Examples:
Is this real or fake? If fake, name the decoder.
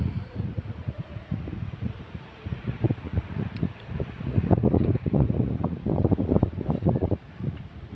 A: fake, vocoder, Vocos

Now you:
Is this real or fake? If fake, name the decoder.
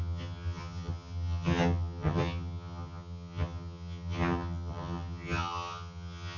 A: fake, vocoder, HiFi-GAN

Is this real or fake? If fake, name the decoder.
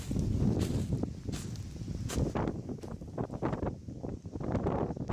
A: real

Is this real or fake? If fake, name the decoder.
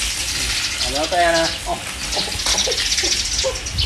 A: real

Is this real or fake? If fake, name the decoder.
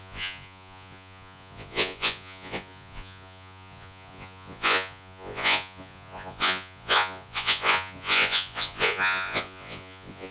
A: fake, vocoder, Vocos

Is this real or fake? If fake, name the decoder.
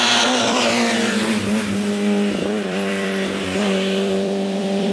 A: fake, vocoder, BigVGAN v2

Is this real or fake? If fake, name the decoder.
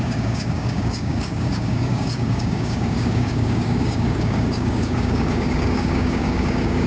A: fake, codec, DAC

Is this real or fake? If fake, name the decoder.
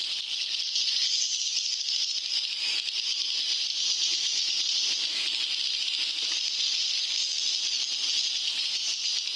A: real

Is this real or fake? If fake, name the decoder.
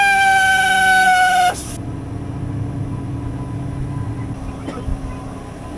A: real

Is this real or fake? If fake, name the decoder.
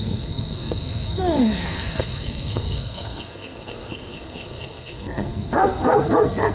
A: fake, codec, SNAC